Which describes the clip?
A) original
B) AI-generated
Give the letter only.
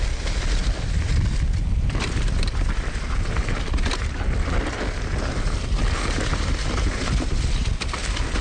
A